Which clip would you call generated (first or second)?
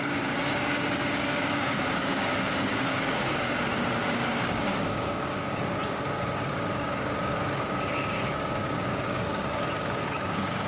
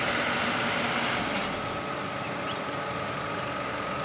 first